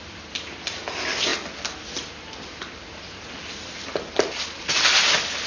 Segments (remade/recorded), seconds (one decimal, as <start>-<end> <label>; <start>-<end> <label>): 0.0-5.5 recorded